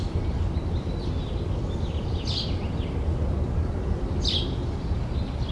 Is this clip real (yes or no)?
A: yes